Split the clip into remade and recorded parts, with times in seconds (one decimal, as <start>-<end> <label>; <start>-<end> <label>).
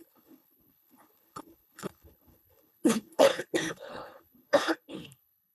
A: 0.0-5.5 remade